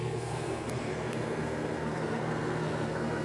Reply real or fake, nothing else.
fake